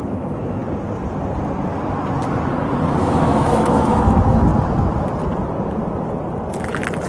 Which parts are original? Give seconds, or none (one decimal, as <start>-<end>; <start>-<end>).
0.6-3.0; 4.5-7.1